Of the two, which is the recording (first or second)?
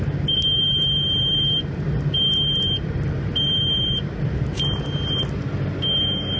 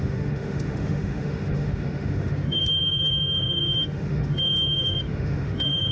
first